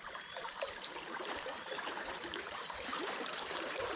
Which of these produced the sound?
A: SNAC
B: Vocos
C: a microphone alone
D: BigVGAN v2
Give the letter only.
D